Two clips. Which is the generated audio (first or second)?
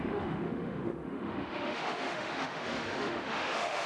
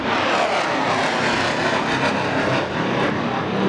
first